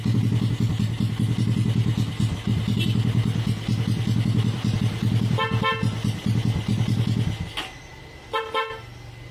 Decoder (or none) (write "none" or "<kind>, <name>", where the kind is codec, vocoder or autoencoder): none